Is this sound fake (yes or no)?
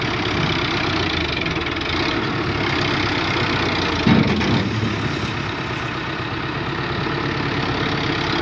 no